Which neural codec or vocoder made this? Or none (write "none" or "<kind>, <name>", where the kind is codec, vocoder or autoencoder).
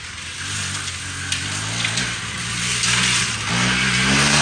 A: none